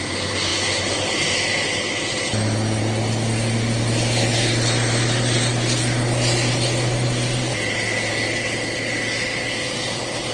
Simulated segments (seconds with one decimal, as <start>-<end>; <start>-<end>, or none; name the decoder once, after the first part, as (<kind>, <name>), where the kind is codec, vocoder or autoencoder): none

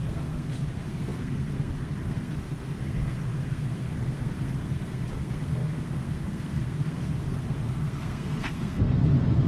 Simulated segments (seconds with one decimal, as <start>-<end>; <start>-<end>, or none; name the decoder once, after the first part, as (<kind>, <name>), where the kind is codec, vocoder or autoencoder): 0.0-9.5 (codec, SNAC)

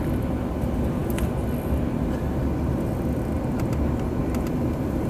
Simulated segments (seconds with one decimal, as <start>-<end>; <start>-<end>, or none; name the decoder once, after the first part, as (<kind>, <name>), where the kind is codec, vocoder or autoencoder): none

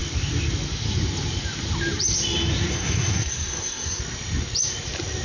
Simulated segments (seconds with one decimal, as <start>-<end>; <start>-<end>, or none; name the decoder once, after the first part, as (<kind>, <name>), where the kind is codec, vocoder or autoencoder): 2.7-4.0 (codec, SNAC)

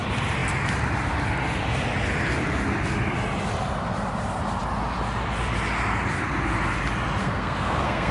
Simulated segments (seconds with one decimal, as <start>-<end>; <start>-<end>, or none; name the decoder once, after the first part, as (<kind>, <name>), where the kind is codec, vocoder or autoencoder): 7.2-8.1 (codec, SNAC)

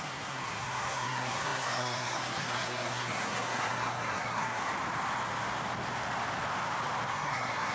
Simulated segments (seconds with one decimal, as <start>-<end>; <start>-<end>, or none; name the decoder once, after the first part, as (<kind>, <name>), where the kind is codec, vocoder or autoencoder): 0.0-4.7 (codec, SNAC); 7.1-7.7

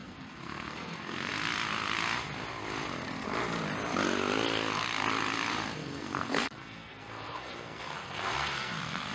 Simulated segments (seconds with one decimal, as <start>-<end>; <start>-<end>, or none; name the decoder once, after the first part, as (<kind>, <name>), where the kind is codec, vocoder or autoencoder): 0.0-1.3 (codec, SNAC); 5.8-9.1